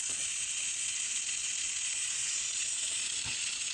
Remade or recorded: remade